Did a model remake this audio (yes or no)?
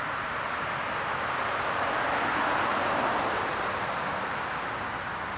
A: no